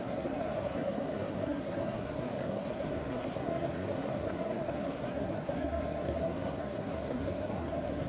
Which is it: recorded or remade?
remade